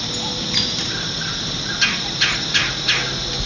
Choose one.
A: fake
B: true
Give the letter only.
B